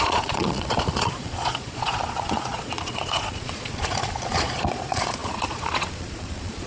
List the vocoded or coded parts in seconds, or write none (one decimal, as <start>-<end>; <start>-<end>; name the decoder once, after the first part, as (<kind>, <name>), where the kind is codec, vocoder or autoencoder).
0.0-6.7 (vocoder, Vocos)